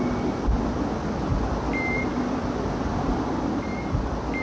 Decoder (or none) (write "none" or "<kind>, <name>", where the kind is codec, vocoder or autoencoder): none